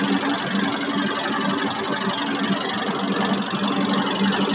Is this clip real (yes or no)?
yes